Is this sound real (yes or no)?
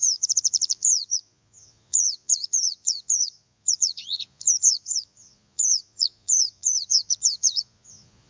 no